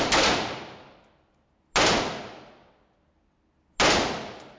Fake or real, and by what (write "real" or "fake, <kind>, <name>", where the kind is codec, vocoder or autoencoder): real